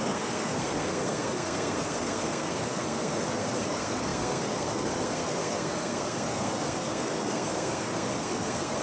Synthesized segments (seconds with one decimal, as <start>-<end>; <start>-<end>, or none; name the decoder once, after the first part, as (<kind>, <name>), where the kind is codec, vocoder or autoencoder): 0.0-8.8 (codec, SNAC)